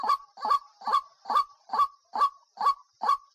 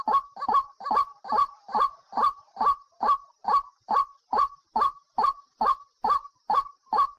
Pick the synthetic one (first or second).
first